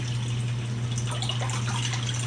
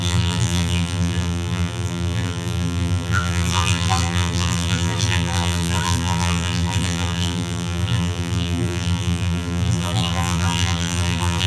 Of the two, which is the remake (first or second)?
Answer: second